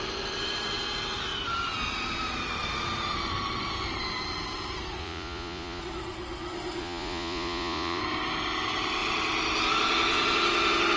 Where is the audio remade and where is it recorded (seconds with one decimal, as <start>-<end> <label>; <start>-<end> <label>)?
0.0-5.0 recorded; 5.0-5.8 remade; 5.8-6.8 recorded; 6.8-8.0 remade; 8.0-11.0 recorded